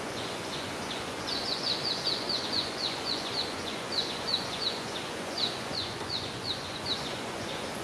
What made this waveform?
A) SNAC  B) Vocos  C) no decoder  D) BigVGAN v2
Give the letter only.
B